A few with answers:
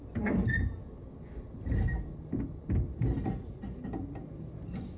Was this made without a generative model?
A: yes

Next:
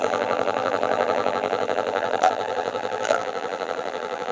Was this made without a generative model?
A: no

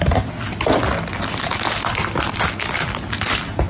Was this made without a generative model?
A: yes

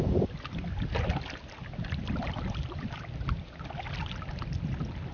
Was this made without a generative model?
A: yes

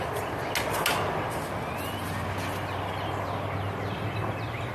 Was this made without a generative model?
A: yes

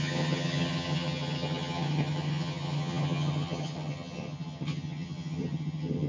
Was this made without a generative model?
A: no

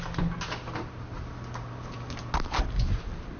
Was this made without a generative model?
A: yes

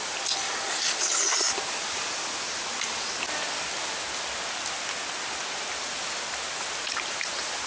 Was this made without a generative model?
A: yes